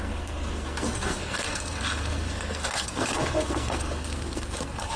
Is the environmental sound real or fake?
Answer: fake